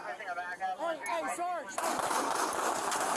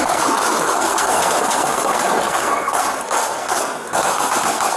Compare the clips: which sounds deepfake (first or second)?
second